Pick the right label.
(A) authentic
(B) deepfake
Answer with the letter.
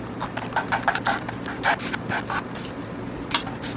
A